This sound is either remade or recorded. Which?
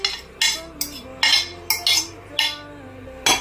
recorded